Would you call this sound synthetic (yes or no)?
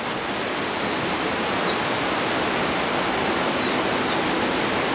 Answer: no